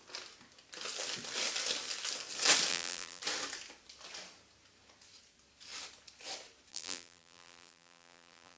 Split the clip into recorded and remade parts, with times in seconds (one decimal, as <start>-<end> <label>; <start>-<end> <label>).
0.0-2.7 recorded; 2.7-3.2 remade; 3.2-6.7 recorded; 6.7-8.6 remade